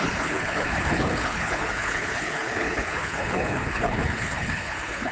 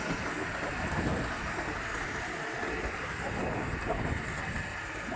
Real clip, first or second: second